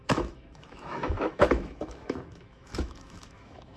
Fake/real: fake